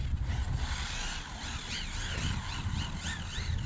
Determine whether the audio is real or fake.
real